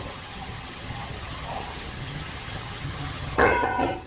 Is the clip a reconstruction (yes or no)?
yes